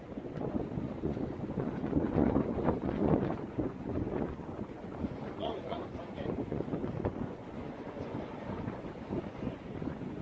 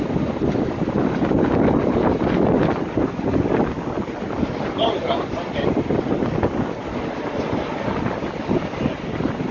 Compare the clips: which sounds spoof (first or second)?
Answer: first